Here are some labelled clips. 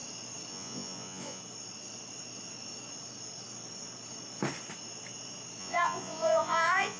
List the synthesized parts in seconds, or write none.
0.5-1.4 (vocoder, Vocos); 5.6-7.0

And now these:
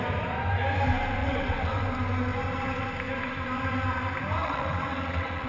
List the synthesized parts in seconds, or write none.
1.2-1.8 (vocoder, WaveNeXt); 4.4-5.5

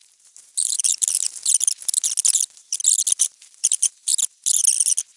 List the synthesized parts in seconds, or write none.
0.0-0.9 (vocoder, BigVGAN v2); 3.2-4.1

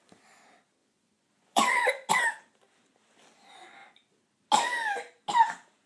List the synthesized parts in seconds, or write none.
0.8-2.1 (vocoder, Vocos)

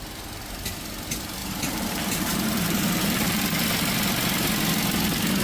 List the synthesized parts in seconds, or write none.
1.4-3.4 (vocoder, BigVGAN v2)

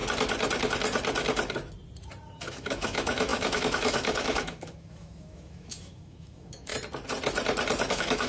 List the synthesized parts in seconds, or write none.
2.4-6.7 (autoencoder, DAC-VAE); 7.9-8.3

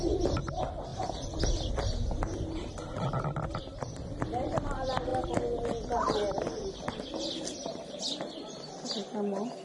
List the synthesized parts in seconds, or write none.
none

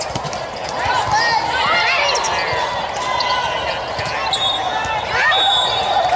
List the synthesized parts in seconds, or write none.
none